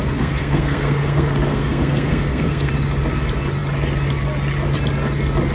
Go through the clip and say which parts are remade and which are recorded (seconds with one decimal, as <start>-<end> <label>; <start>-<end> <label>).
0.0-2.7 remade; 2.7-5.5 recorded

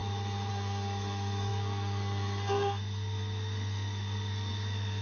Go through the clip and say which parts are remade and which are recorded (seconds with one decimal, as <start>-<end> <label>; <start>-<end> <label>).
0.0-0.5 recorded; 0.5-5.0 remade

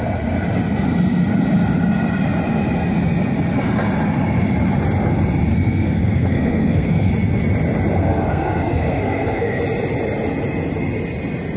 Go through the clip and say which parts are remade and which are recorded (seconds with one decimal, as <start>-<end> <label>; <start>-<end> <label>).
0.0-5.5 recorded; 5.5-7.1 remade; 7.1-8.0 recorded; 8.0-9.6 remade; 9.6-11.6 recorded